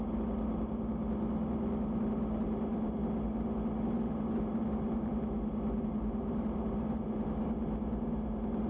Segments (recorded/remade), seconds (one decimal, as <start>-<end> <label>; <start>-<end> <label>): 0.0-8.7 recorded